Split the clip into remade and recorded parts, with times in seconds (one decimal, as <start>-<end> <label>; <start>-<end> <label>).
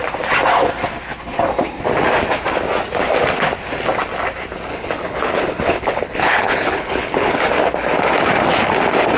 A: 0.0-4.7 recorded; 4.7-7.5 remade; 7.5-9.2 recorded